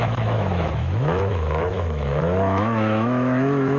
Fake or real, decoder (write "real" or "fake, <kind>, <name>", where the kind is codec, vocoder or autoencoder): fake, autoencoder, DAC-VAE